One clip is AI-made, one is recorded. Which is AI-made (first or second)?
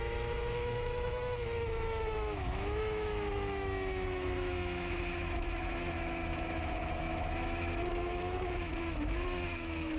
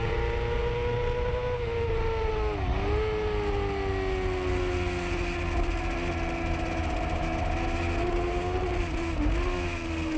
first